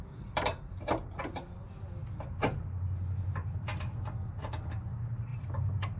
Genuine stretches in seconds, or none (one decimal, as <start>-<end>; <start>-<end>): 0.8-6.0